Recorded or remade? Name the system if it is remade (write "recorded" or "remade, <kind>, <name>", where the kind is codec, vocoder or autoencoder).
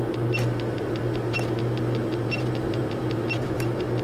recorded